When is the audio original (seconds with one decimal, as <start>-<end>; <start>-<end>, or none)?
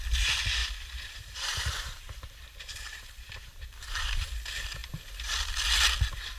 0.0-0.6; 4.3-6.4